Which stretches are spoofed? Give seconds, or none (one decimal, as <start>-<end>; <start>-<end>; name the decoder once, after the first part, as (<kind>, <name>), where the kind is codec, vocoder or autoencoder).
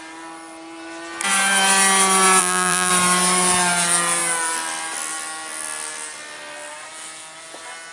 2.4-2.9 (vocoder, BigVGAN v2)